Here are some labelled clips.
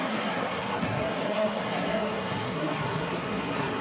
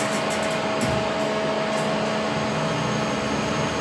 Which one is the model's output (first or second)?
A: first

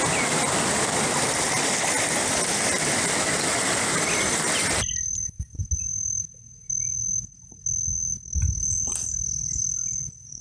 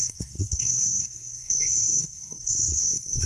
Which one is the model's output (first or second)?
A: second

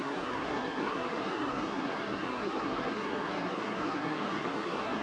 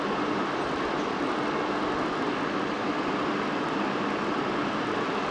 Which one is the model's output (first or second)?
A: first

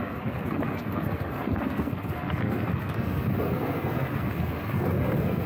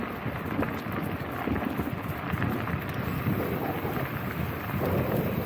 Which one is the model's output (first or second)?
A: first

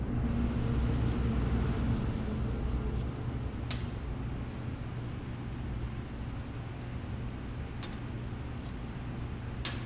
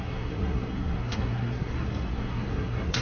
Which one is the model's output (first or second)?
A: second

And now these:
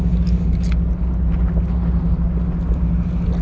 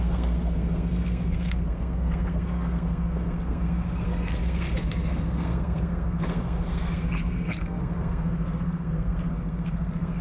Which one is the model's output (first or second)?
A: second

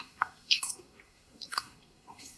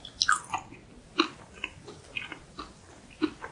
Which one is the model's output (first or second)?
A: first